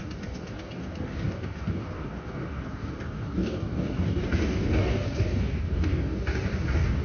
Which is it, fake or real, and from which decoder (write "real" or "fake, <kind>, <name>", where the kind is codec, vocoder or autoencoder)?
fake, codec, DAC